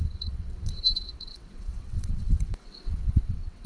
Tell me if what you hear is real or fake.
fake